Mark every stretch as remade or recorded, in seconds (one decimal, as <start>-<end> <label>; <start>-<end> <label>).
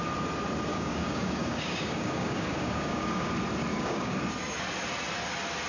0.0-0.7 recorded; 0.7-3.3 remade; 3.3-3.7 recorded; 3.7-4.2 remade; 4.2-5.7 recorded